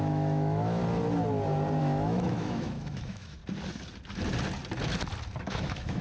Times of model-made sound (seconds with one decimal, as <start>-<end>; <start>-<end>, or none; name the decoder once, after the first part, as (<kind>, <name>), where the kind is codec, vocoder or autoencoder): 0.0-0.8 (autoencoder, DAC-VAE); 1.8-3.4; 5.4-6.0